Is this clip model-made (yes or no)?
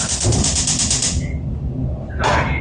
no